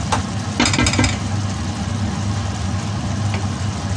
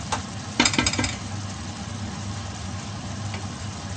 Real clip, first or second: first